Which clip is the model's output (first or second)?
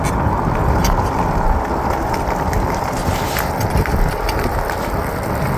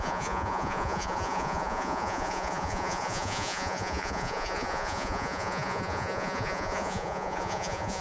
second